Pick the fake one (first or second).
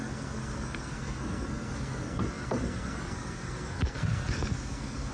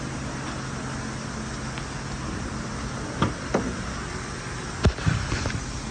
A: first